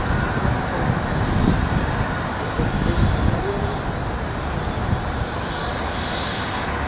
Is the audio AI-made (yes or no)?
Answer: no